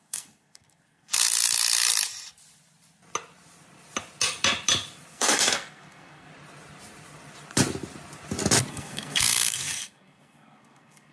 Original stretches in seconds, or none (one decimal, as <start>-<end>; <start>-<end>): 1.1-5.1; 6.3-8.7